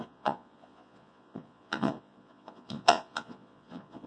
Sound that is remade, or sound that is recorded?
remade